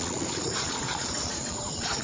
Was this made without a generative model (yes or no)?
no